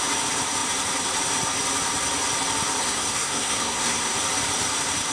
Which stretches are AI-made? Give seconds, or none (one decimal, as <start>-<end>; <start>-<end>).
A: 2.8-4.2